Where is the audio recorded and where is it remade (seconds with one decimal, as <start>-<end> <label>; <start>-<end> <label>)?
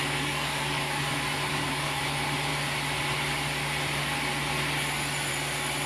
0.0-1.0 remade; 1.0-1.5 recorded; 1.5-2.0 remade; 2.0-5.9 recorded